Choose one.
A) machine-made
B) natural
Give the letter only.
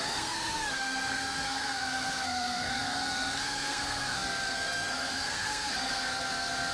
A